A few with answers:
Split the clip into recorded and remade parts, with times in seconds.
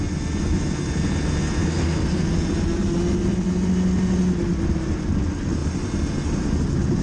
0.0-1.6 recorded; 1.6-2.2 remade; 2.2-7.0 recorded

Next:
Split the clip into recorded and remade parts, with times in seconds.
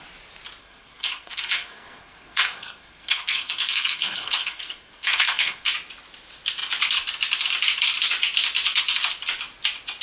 0.0-0.6 recorded; 0.6-5.7 remade; 5.7-10.0 recorded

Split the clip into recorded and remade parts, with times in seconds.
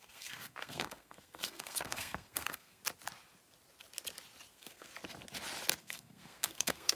0.0-2.8 remade; 2.8-4.5 recorded; 4.5-4.9 remade; 4.9-5.8 recorded; 5.8-7.0 remade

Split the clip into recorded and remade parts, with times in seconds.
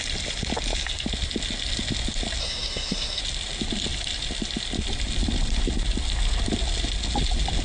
0.0-2.4 recorded; 2.4-3.2 remade; 3.2-7.6 recorded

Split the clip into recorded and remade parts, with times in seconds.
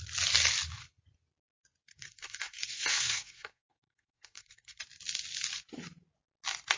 0.0-1.9 recorded; 1.9-4.8 remade; 4.8-6.8 recorded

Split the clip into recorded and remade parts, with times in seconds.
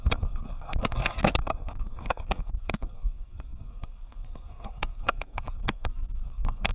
0.0-6.7 remade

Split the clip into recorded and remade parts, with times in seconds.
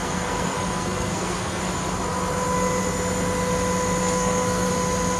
0.0-1.6 remade; 1.6-4.0 recorded; 4.0-4.7 remade; 4.7-5.2 recorded